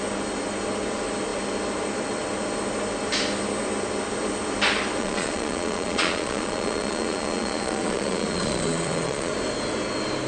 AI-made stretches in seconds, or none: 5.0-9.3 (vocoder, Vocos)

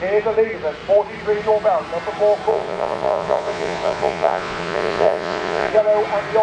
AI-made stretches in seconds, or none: 2.5-5.7 (vocoder, Vocos)

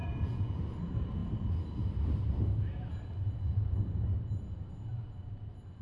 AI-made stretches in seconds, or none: 0.0-0.6 (vocoder, Vocos)

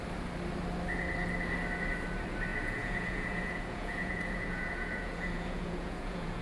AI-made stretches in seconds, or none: 2.5-6.4 (vocoder, Vocos)

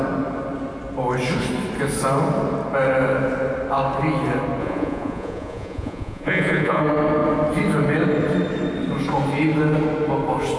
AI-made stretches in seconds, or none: 4.6-6.8 (vocoder, Vocos)

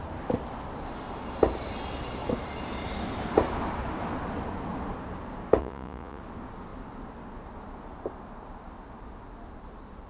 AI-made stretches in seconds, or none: 5.6-6.2 (vocoder, Vocos)